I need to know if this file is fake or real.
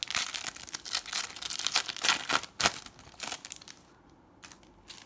real